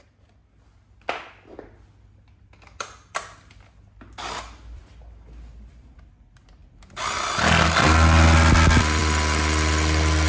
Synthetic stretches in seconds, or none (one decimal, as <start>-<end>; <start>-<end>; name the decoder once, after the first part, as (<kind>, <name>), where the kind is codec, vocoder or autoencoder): none